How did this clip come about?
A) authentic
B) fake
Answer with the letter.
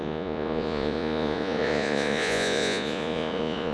B